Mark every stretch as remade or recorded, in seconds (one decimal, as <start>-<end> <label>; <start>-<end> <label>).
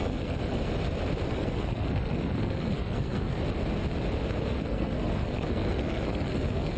0.0-0.7 remade; 0.7-1.3 recorded; 1.3-3.4 remade; 3.4-4.4 recorded; 4.4-6.8 remade